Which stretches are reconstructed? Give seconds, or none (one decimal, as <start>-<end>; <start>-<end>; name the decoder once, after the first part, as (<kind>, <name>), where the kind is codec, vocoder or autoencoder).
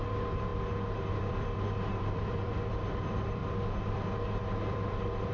0.0-0.5 (vocoder, BigVGAN v2); 1.1-3.4; 3.9-5.3